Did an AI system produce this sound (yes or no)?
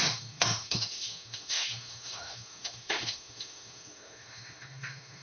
yes